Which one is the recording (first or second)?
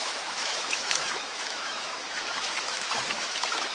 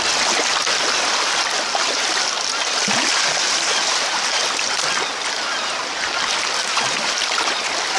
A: second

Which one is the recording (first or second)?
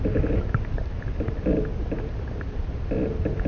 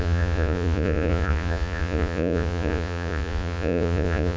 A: first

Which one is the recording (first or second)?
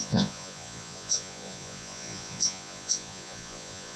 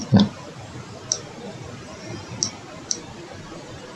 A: second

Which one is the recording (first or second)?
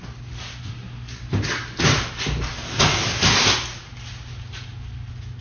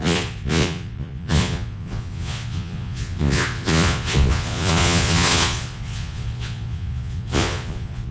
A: first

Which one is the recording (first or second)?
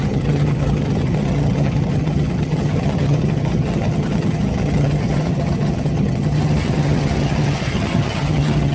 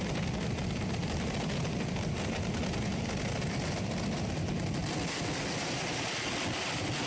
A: second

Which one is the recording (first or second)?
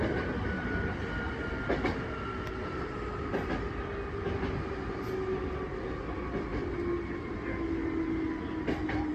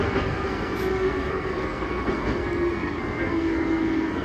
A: first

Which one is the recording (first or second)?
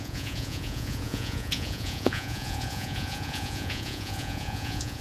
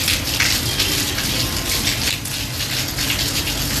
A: second